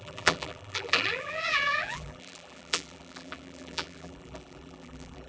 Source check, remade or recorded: remade